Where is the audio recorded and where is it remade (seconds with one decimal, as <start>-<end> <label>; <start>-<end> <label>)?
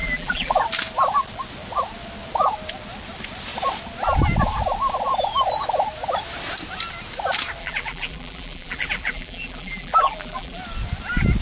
0.0-0.6 remade; 0.6-7.6 recorded; 7.6-10.6 remade; 10.6-11.4 recorded